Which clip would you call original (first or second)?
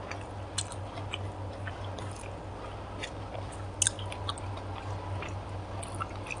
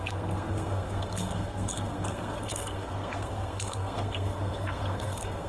first